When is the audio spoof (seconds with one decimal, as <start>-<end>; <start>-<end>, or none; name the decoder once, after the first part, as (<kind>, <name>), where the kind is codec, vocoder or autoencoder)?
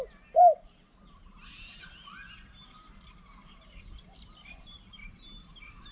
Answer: none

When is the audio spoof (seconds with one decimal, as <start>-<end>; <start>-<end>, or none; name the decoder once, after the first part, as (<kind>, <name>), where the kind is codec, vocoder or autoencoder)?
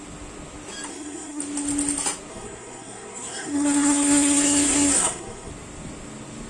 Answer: 0.9-1.4 (codec, SNAC); 2.3-5.5